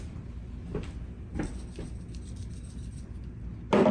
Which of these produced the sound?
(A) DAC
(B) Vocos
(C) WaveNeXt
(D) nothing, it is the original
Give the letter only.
D